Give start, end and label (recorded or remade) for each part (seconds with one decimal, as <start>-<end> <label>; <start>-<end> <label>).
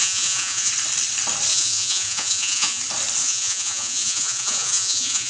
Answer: 0.0-0.7 remade; 0.7-1.5 recorded; 1.5-2.8 remade; 2.8-3.2 recorded; 3.2-5.3 remade